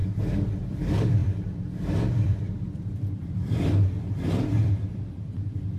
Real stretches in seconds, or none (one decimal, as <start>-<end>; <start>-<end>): 0.0-0.6